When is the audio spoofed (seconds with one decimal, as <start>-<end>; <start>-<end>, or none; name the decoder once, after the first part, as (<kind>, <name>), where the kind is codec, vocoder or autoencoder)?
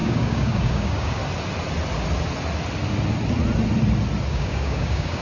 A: 0.0-1.2 (codec, DAC); 4.3-5.2